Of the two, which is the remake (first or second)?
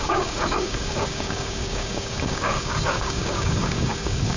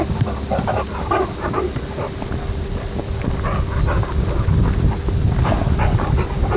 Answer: first